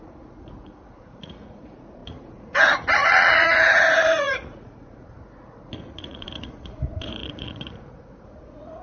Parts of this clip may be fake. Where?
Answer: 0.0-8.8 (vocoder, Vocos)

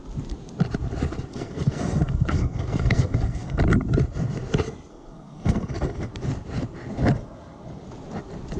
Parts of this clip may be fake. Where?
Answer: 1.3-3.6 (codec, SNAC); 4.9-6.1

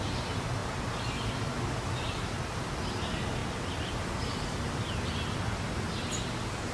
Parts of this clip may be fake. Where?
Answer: none